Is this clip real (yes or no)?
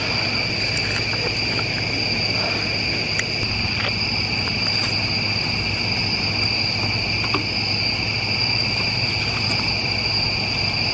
yes